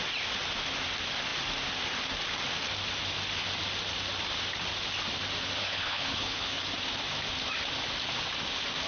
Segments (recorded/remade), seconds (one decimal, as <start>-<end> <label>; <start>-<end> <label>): 0.0-5.6 recorded; 5.6-6.6 remade; 6.6-8.9 recorded